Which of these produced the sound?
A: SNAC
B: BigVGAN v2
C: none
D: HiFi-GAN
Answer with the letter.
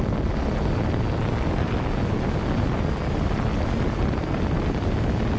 C